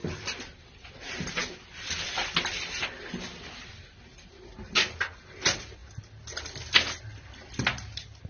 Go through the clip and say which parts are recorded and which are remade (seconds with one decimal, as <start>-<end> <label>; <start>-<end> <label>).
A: 0.0-8.3 recorded